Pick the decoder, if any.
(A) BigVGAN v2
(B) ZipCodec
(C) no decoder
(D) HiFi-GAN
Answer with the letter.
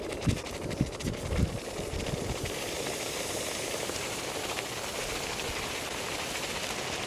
C